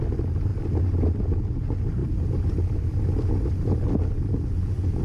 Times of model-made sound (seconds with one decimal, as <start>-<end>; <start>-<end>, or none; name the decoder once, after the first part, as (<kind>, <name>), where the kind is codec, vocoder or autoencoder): 0.0-5.0 (vocoder, BigVGAN v2)